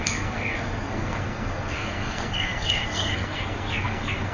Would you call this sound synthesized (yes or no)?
yes